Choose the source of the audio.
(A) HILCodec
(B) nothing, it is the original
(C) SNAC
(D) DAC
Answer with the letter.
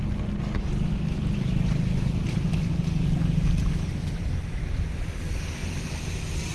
B